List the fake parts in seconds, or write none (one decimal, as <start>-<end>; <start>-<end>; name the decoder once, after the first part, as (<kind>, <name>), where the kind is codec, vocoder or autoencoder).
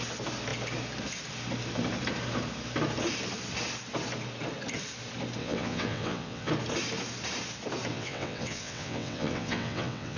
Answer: 5.4-6.5 (vocoder, WaveNeXt); 7.9-10.2